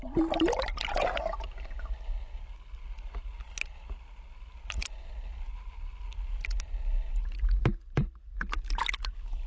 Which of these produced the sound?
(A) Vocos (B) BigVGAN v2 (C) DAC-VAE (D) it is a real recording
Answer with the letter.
D